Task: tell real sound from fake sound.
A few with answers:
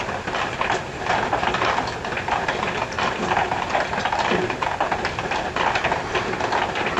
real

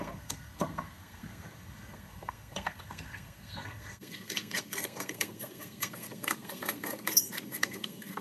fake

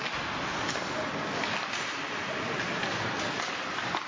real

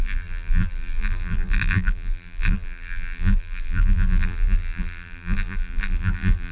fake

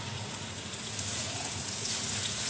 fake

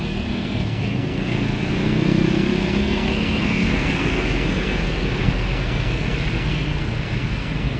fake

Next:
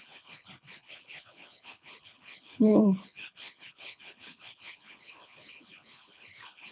fake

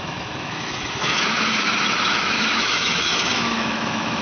fake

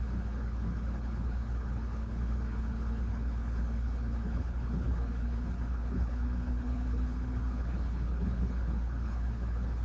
fake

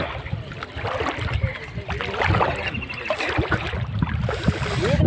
real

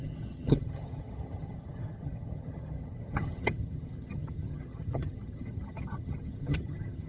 fake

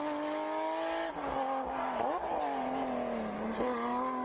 real